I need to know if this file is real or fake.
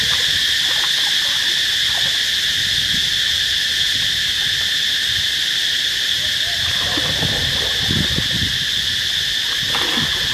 real